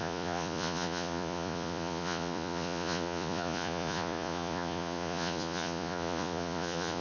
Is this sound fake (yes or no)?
yes